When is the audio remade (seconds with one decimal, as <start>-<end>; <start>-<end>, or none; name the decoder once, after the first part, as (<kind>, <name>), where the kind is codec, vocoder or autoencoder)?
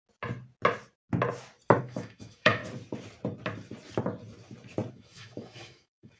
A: 1.8-2.6 (autoencoder, DAC-VAE); 4.9-6.2